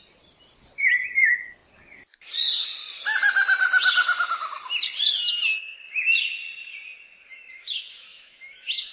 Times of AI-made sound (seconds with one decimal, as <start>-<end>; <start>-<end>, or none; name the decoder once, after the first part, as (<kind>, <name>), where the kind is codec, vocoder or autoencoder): 7.3-8.9 (autoencoder, DAC-VAE)

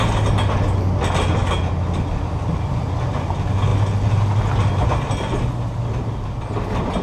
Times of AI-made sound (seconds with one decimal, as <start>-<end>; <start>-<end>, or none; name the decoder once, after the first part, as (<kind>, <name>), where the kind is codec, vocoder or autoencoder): none

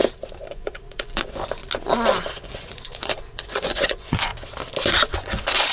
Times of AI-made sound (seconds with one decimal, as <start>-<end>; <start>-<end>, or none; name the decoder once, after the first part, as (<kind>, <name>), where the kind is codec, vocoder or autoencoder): 0.5-1.6 (vocoder, Vocos); 2.3-4.3; 5.1-5.7

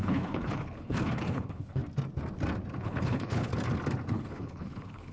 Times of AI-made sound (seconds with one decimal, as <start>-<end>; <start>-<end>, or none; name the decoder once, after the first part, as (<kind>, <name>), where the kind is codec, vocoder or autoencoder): 0.0-1.8 (codec, HILCodec); 2.8-3.5; 4.1-5.1